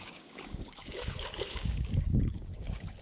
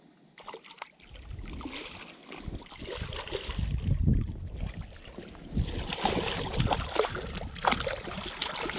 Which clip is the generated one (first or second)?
first